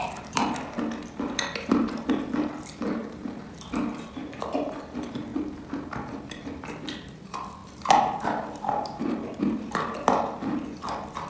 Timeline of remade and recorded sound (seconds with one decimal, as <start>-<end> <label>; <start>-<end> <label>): 0.0-3.0 remade; 3.0-3.7 recorded; 3.7-5.3 remade; 5.3-6.4 recorded; 6.4-7.6 remade; 7.6-9.4 recorded; 9.4-11.3 remade